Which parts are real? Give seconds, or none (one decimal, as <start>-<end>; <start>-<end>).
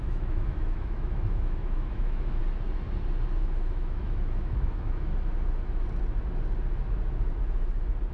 2.4-3.4; 5.1-8.1